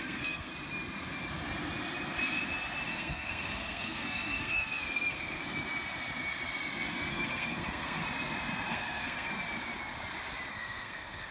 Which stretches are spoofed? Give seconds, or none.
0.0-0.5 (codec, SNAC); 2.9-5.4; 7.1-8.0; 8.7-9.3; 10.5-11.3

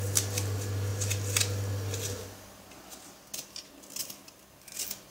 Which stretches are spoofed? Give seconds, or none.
none

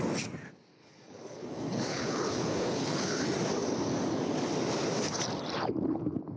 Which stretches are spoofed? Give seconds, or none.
0.7-3.2 (codec, HILCodec)

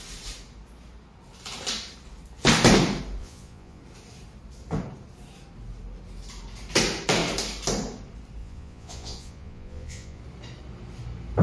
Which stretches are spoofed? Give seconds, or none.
3.2-3.8 (vocoder, Vocos); 8.4-10.2